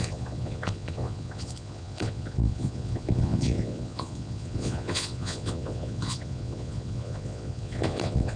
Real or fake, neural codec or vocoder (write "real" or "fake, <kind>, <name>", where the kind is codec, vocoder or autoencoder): fake, vocoder, Vocos